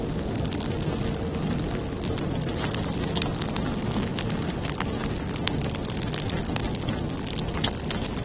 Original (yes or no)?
yes